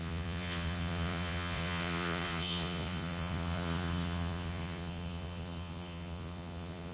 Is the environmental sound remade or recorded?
remade